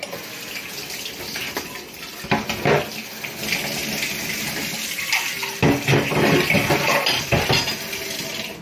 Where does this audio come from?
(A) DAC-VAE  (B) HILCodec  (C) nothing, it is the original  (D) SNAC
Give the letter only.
C